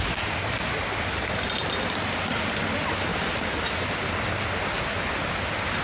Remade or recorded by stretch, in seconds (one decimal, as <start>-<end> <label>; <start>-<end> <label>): 0.0-5.8 recorded